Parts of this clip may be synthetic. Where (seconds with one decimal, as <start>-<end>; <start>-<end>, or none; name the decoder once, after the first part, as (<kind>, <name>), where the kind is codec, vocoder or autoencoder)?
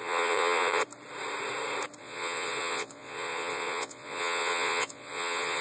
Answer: 0.0-0.8 (vocoder, Vocos); 2.0-5.6